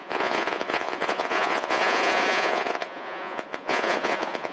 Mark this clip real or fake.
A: fake